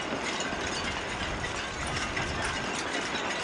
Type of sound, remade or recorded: recorded